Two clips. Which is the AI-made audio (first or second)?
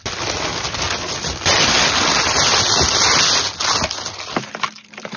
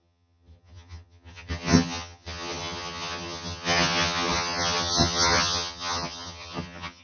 second